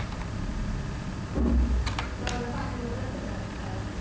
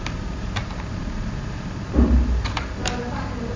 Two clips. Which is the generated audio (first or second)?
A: second